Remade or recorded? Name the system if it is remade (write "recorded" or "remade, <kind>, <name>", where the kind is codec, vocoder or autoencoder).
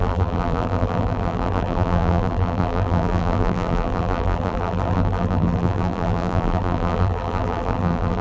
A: remade, vocoder, BigVGAN v2